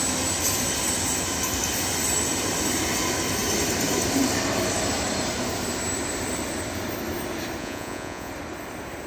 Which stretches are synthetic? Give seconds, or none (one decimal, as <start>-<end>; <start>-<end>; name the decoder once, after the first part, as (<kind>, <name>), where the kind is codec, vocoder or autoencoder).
7.6-8.3 (vocoder, Vocos)